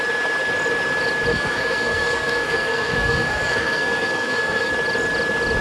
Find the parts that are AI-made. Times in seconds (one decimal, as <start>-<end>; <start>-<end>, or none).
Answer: 1.3-4.7